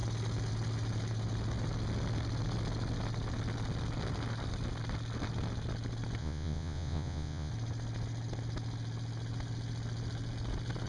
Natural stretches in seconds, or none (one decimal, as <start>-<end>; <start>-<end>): 0.0-6.2; 7.5-10.9

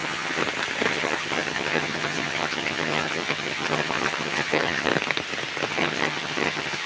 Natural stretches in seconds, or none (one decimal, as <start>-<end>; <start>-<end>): 0.4-0.9; 4.9-5.7

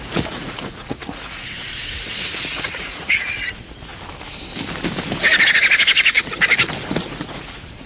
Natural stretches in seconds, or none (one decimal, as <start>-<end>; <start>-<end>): 3.9-7.0

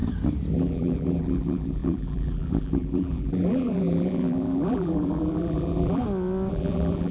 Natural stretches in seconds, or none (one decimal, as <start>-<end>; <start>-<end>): 0.0-0.5; 6.0-6.5

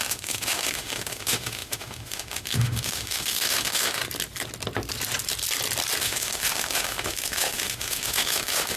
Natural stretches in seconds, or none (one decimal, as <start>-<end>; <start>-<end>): 4.0-6.0

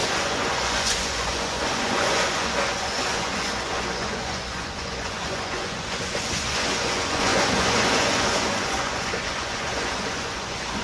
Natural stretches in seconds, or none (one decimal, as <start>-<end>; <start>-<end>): none